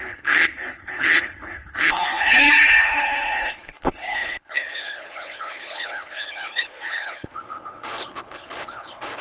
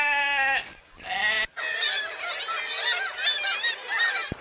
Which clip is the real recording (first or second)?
second